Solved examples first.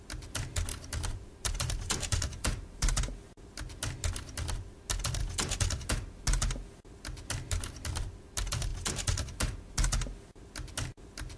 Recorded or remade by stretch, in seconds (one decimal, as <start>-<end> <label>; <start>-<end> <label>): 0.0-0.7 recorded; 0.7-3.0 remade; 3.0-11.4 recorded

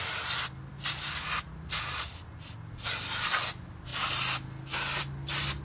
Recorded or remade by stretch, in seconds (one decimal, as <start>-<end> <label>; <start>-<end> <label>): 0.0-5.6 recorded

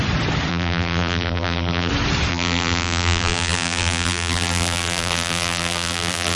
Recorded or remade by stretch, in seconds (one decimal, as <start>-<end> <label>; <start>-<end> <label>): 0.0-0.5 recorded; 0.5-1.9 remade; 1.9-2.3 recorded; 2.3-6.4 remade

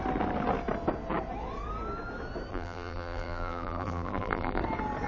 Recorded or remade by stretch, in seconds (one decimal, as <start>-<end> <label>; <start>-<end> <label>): 0.0-2.5 recorded; 2.5-4.6 remade; 4.6-5.1 recorded

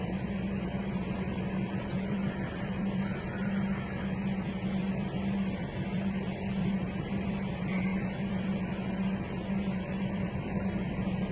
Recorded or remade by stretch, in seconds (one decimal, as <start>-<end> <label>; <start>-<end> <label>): 0.0-11.3 remade